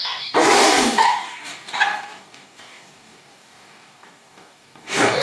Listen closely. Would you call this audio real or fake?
fake